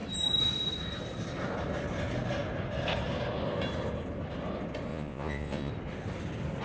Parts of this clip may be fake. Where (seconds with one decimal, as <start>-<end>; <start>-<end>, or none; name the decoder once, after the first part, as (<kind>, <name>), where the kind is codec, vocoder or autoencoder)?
4.9-5.7 (vocoder, Vocos)